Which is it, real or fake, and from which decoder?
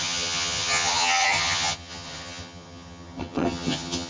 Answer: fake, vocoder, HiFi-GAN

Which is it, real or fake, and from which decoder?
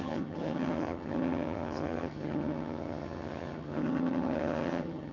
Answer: fake, vocoder, HiFi-GAN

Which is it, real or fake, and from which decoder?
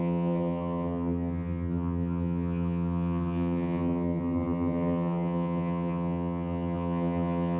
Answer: fake, vocoder, HiFi-GAN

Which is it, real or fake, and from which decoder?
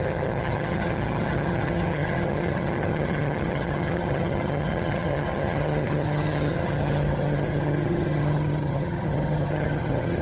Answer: fake, vocoder, HiFi-GAN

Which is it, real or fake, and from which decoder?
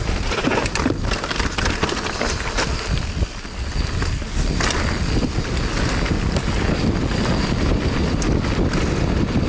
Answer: real